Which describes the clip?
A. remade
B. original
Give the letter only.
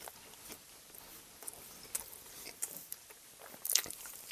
A